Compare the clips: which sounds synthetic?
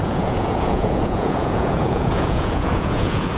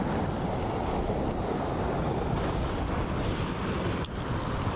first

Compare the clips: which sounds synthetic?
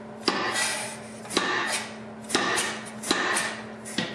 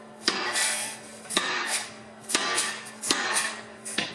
second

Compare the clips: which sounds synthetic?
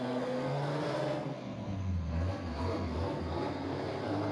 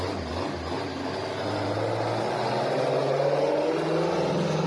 first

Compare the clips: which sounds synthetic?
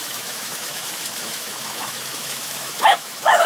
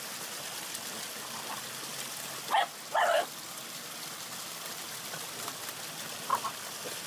first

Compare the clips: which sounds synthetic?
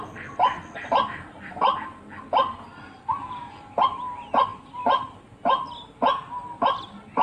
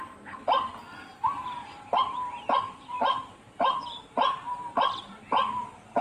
second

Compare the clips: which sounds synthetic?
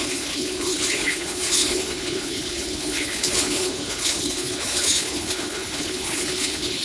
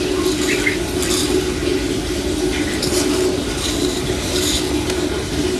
first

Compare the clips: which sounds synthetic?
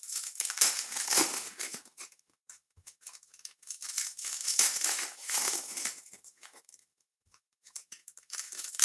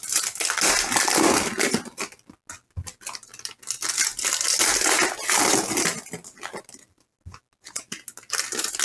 first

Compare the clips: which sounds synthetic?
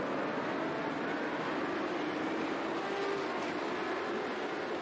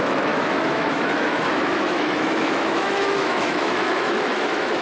second